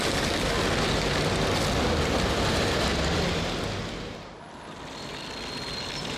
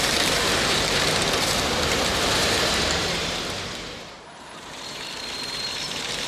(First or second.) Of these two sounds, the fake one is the second